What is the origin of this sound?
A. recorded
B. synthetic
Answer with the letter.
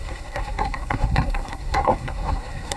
B